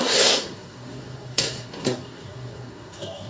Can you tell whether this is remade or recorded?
remade